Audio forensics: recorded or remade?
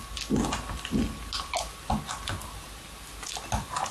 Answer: recorded